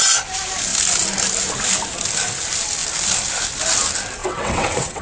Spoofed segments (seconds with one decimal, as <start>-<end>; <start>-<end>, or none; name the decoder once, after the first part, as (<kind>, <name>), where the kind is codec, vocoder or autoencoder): 4.2-5.0 (vocoder, WaveNeXt)